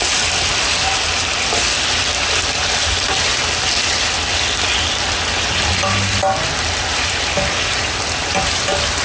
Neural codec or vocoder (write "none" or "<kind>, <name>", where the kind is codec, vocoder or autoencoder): none